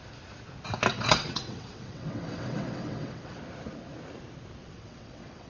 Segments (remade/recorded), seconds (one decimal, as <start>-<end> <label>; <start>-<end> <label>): 0.0-0.9 recorded; 0.9-3.4 remade; 3.4-4.6 recorded; 4.6-5.5 remade